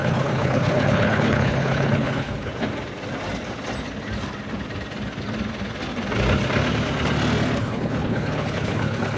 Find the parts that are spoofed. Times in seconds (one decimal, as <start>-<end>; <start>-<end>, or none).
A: 0.0-2.5; 7.6-9.2